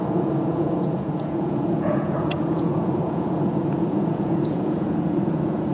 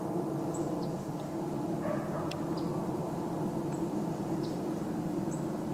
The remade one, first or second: first